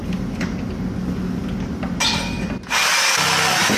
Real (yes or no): yes